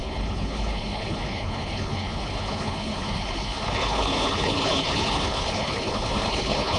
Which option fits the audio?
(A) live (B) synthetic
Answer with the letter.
B